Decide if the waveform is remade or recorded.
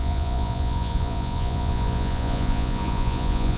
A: remade